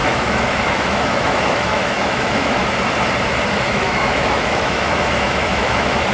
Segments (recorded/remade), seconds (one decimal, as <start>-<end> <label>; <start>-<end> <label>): 0.0-2.6 remade; 2.6-3.7 recorded; 3.7-6.1 remade

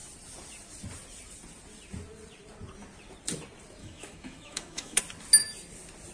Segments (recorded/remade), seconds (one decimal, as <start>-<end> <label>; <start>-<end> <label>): 0.0-3.8 recorded; 3.8-5.0 remade; 5.0-6.1 recorded